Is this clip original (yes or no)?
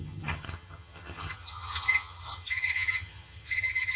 no